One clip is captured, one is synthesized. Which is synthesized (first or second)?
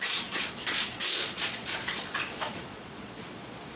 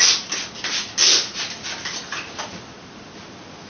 first